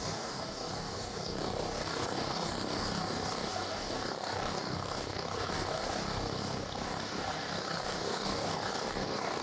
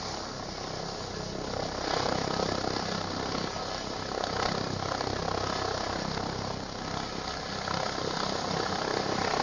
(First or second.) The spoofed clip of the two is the first